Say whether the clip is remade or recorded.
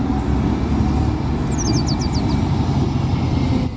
recorded